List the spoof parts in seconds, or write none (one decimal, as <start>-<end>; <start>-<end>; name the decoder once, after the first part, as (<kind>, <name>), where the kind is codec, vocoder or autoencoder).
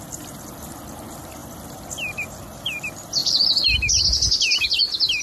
1.4-2.8 (vocoder, BigVGAN v2)